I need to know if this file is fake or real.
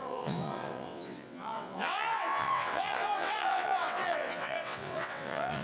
fake